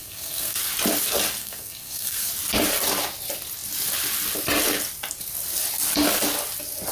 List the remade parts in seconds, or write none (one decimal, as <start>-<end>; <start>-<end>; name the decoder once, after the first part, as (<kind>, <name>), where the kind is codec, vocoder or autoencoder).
0.0-0.6 (codec, SNAC); 1.4-2.3